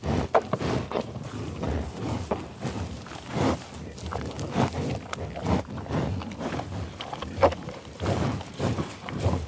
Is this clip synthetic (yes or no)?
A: no